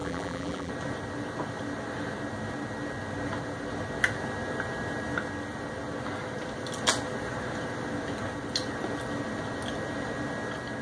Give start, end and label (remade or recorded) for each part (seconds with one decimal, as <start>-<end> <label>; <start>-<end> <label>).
0.0-0.7 remade; 0.7-10.8 recorded